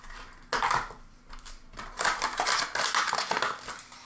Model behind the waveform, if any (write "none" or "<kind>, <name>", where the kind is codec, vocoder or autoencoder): none